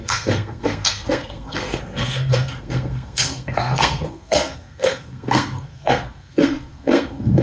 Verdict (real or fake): fake